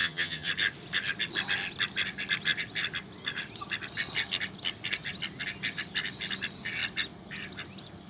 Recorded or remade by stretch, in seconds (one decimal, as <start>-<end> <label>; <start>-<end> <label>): 0.0-0.5 remade; 0.5-8.1 recorded